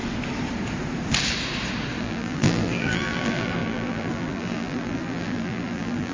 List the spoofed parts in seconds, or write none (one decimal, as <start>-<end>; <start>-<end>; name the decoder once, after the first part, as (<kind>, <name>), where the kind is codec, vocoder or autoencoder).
2.0-6.1 (vocoder, BigVGAN v2)